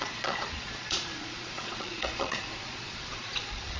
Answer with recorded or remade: remade